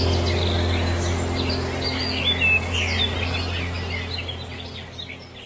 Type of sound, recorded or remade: recorded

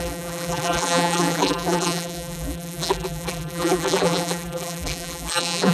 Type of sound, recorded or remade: remade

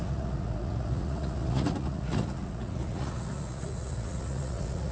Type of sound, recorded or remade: remade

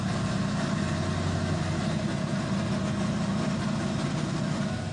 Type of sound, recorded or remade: recorded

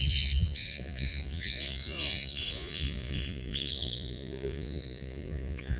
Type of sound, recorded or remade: remade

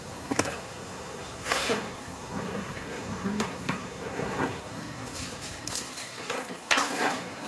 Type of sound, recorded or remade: remade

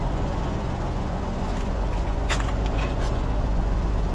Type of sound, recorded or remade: remade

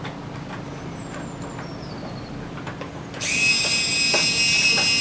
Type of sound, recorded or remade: recorded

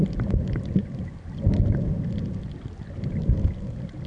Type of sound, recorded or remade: recorded